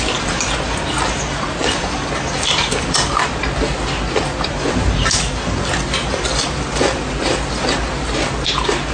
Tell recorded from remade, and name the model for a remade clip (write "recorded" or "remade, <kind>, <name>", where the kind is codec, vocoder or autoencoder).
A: recorded